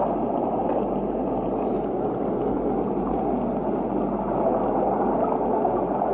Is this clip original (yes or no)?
yes